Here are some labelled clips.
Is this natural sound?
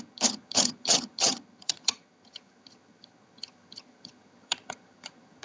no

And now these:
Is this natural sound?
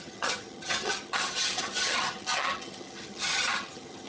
no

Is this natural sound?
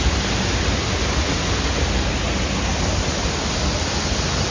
yes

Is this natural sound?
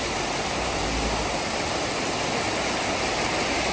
yes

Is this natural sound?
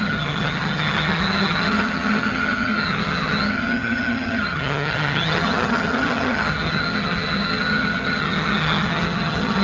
no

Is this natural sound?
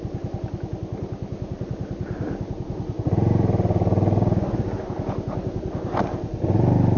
yes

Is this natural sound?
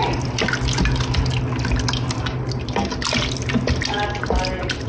yes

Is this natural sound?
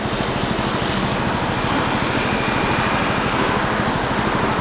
yes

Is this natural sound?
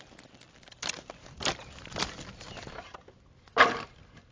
yes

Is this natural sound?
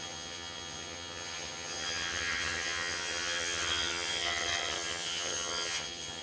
no